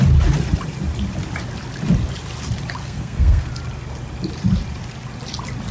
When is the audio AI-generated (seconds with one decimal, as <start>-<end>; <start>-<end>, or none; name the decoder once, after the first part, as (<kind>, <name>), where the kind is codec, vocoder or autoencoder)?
2.8-3.5 (codec, SNAC)